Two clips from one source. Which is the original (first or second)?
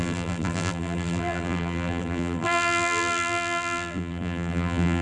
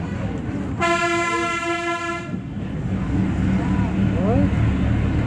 second